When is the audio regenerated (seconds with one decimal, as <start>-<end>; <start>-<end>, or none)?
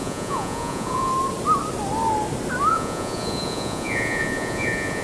0.0-1.1; 2.7-5.0